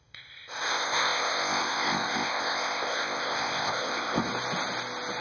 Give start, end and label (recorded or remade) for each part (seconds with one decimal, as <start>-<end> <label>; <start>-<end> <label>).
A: 0.0-4.3 remade; 4.3-5.2 recorded